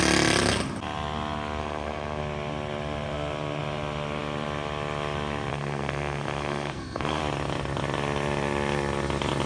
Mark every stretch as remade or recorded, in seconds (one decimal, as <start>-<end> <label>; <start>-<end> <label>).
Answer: 0.0-1.6 recorded; 1.6-2.2 remade; 2.2-5.5 recorded; 5.5-7.2 remade; 7.2-9.5 recorded